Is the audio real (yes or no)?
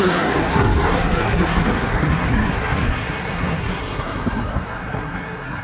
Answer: no